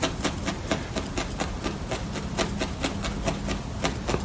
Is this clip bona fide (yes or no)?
yes